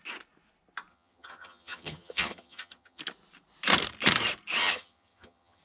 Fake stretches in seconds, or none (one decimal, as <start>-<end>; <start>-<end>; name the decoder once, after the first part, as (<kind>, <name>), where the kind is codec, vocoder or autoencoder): 0.9-3.0 (vocoder, HiFi-GAN); 4.6-5.6